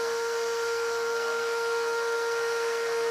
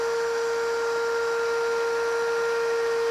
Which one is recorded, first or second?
second